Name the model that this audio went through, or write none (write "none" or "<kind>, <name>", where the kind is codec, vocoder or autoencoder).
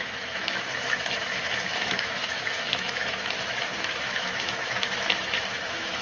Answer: autoencoder, DAC-VAE